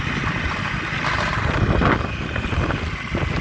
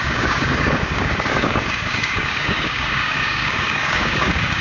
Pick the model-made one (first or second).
second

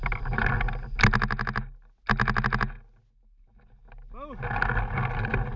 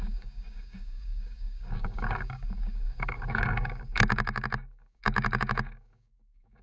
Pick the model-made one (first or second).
second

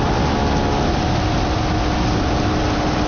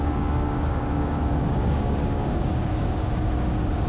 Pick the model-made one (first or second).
second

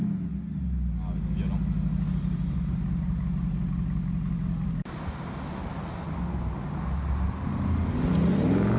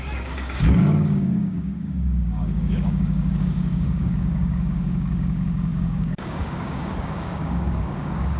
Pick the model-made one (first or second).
second